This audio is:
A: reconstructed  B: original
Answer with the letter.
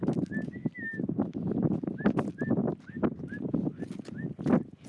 B